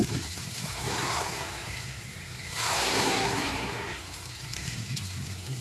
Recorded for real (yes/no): no